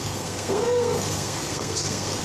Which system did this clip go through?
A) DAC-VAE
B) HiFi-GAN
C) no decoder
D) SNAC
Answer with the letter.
D